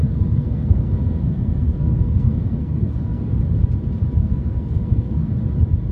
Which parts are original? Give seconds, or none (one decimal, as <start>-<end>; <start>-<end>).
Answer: 3.4-4.2; 5.3-5.9